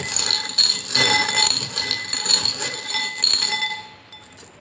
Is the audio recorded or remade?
recorded